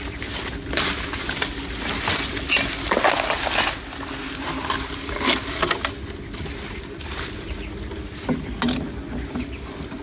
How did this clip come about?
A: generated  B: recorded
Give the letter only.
B